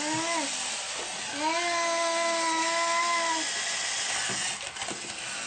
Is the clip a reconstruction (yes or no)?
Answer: no